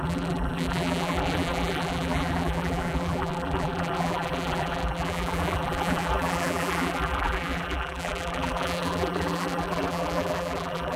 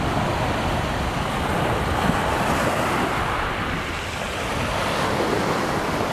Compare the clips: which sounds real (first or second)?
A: second